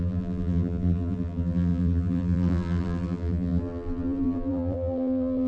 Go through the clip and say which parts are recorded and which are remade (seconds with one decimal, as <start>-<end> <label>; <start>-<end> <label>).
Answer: 0.0-5.5 remade